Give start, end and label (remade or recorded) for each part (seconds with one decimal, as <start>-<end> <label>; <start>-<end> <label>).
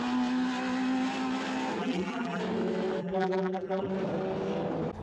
0.0-1.8 recorded; 1.8-2.4 remade; 2.4-3.0 recorded; 3.0-3.9 remade; 3.9-5.0 recorded